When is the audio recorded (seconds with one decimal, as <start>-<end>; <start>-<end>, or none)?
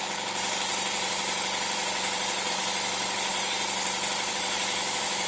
0.0-2.5; 3.3-4.3